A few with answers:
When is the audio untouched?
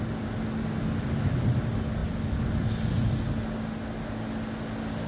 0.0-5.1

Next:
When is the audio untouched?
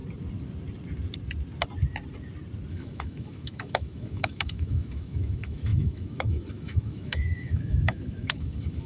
0.0-2.7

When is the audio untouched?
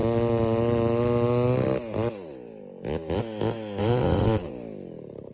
0.0-3.8; 4.5-5.3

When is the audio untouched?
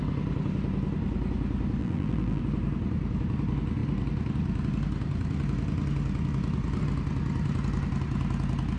0.0-1.8; 2.4-8.8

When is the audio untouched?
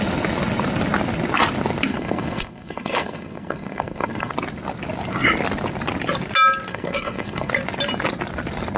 0.0-1.9; 4.3-6.7; 7.5-8.8